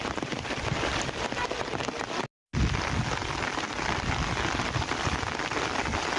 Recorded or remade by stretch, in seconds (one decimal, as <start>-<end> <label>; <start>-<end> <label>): 0.0-6.2 recorded